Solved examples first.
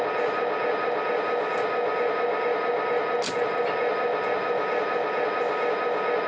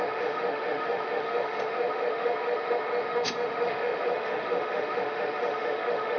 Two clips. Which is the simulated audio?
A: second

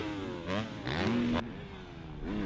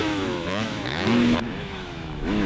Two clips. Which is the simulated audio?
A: second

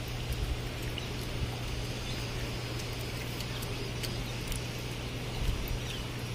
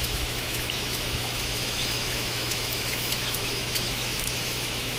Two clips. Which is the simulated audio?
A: second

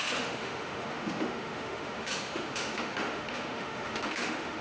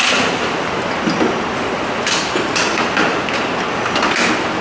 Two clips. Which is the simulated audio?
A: first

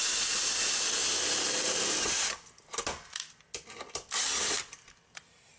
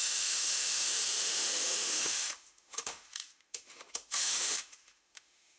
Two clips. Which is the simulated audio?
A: second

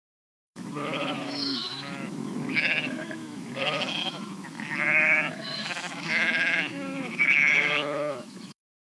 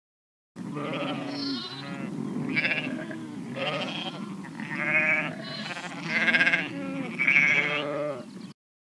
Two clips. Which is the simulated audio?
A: first